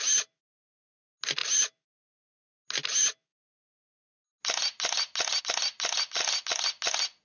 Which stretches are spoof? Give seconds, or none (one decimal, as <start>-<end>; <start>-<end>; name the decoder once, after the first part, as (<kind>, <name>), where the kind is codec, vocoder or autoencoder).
none